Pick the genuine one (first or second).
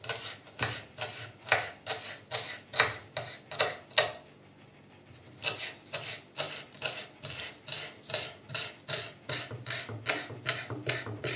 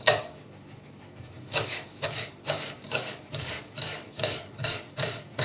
first